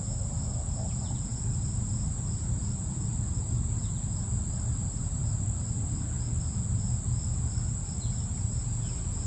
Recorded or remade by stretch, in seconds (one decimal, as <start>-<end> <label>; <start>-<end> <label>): 0.0-9.3 recorded